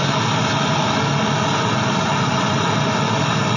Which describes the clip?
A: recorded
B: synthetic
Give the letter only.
A